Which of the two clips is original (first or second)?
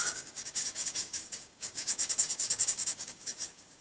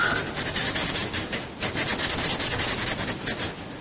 second